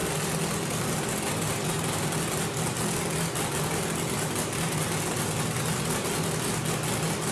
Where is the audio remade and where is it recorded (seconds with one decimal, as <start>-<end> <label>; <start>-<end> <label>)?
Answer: 0.0-7.3 recorded

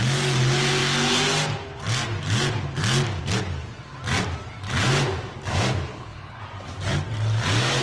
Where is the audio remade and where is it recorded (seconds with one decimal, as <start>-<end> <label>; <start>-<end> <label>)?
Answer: 0.0-5.9 recorded; 5.9-6.4 remade; 6.4-7.8 recorded

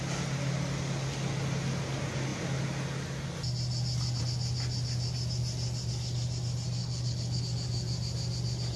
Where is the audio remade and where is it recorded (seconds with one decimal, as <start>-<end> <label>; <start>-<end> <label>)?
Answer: 0.0-6.8 recorded; 6.8-7.4 remade; 7.4-8.8 recorded

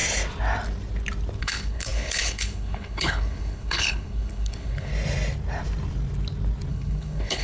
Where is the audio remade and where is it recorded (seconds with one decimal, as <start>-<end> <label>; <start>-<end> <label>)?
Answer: 0.0-1.4 recorded; 1.4-4.9 remade; 4.9-6.7 recorded; 6.7-7.4 remade

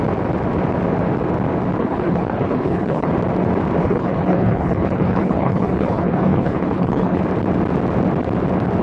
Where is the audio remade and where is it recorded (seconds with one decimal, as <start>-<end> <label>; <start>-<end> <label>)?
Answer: 0.0-1.8 recorded; 1.8-3.1 remade; 3.1-3.8 recorded; 3.8-7.2 remade; 7.2-8.8 recorded

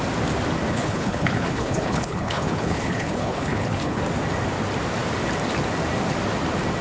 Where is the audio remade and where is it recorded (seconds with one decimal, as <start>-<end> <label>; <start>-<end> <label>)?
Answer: 0.0-0.7 recorded; 0.7-4.0 remade; 4.0-6.8 recorded

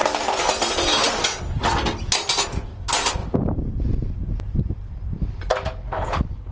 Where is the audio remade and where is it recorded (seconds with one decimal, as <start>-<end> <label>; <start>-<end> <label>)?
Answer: 0.0-5.8 recorded; 5.8-6.5 remade

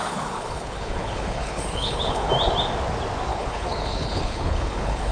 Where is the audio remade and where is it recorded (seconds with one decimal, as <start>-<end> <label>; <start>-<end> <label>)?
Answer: 0.0-2.3 remade; 2.3-3.3 recorded; 3.3-5.1 remade